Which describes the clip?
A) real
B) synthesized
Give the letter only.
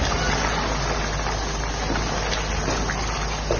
A